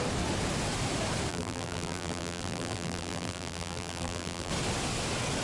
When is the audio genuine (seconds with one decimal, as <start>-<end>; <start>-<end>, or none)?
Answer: 0.0-1.3; 4.5-5.4